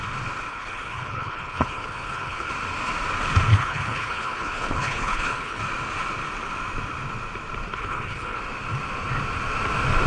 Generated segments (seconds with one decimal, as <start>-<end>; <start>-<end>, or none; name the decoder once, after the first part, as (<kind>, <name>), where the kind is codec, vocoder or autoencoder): 0.5-2.5 (codec, HILCodec); 3.5-5.6; 7.7-8.4